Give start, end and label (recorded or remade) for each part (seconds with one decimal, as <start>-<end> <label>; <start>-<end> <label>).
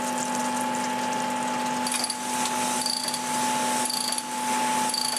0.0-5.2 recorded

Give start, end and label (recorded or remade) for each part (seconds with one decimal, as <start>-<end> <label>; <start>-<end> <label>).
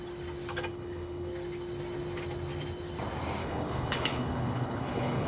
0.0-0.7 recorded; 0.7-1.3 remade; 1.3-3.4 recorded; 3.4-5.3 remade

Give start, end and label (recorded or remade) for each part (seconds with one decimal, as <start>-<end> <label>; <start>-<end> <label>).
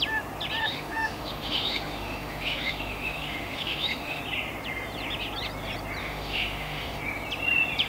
0.0-0.6 recorded; 0.6-4.2 remade; 4.2-6.0 recorded; 6.0-7.0 remade; 7.0-7.9 recorded